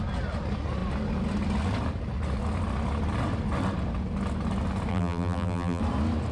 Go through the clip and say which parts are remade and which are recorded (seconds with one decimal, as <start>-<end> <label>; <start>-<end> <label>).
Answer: 0.0-4.9 recorded; 4.9-5.8 remade; 5.8-6.3 recorded